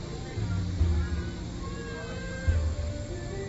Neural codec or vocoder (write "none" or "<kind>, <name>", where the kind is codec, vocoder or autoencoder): none